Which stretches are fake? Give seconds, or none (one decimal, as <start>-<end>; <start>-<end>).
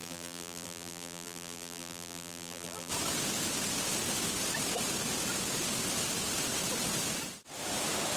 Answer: 0.0-2.9